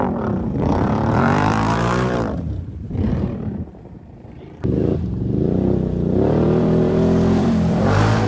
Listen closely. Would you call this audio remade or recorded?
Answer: remade